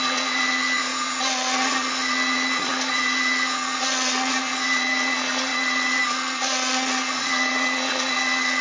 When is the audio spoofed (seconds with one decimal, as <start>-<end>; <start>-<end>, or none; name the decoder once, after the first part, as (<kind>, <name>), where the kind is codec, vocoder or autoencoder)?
0.0-8.6 (vocoder, Vocos)